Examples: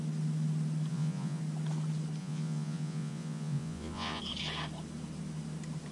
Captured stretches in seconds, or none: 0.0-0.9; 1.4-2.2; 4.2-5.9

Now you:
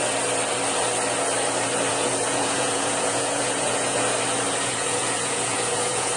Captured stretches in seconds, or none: 0.0-1.9; 4.1-4.6

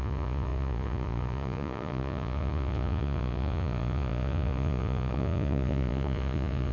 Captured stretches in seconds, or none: none

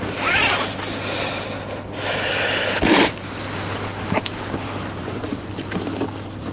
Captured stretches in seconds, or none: 0.0-5.0; 5.5-6.5

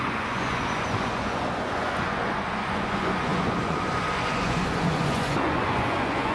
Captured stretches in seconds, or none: none

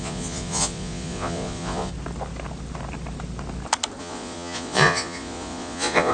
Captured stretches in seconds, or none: 1.9-4.0

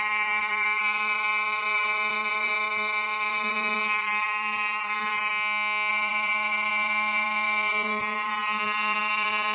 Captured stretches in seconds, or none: 5.3-5.9

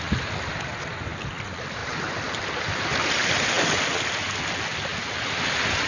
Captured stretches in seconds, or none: 0.0-5.9